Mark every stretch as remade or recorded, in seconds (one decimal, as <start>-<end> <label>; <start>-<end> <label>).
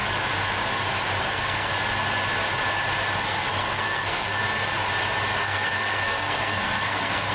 0.0-1.2 recorded; 1.2-1.7 remade; 1.7-3.2 recorded; 3.2-4.4 remade; 4.4-5.4 recorded; 5.4-7.3 remade